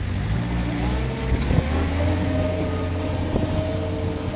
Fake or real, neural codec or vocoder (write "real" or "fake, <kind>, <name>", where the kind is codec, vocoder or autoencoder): real